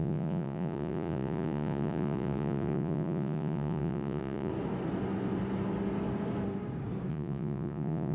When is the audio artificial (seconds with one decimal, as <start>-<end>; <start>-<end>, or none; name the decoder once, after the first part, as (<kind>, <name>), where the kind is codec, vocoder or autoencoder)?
0.0-4.5 (vocoder, Vocos); 7.1-8.1